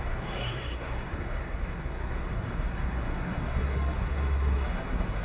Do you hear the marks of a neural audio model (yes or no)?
yes